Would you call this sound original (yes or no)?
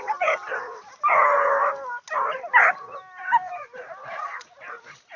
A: yes